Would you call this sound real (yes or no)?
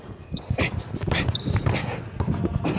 yes